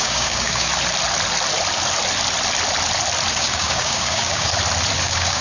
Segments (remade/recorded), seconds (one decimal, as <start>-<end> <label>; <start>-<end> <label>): 0.0-0.7 remade; 0.7-3.3 recorded; 3.3-4.5 remade; 4.5-5.0 recorded; 5.0-5.4 remade